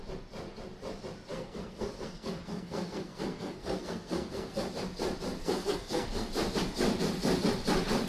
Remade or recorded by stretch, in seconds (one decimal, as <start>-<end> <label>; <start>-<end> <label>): 0.0-1.3 recorded; 1.3-4.6 remade; 4.6-5.4 recorded; 5.4-6.3 remade; 6.3-8.1 recorded